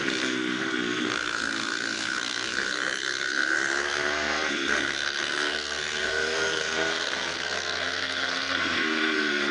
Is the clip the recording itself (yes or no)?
no